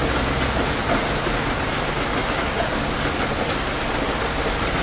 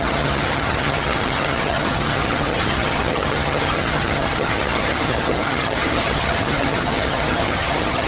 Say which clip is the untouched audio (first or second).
first